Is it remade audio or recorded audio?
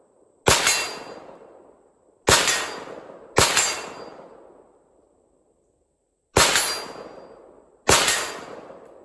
recorded